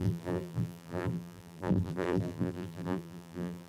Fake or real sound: fake